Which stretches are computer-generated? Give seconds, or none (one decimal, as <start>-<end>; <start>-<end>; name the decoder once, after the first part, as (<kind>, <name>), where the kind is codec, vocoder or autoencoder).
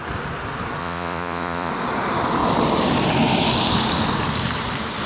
0.8-1.7 (vocoder, Vocos)